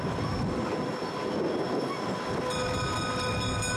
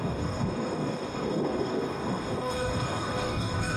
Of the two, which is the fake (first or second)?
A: second